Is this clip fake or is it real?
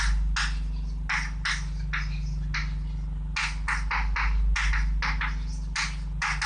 real